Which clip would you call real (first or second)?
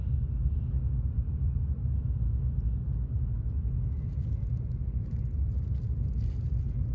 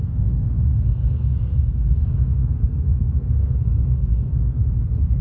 first